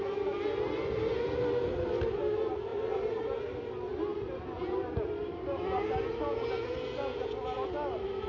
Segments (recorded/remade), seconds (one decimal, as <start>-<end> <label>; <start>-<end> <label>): 0.0-8.3 recorded